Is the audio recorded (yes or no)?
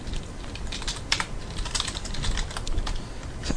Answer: yes